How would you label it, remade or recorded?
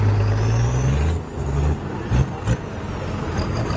recorded